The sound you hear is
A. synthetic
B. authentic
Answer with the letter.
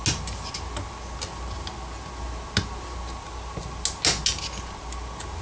B